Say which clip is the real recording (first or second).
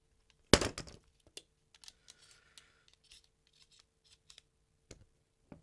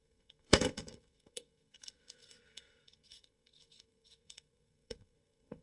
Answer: first